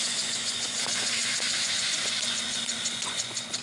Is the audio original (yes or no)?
no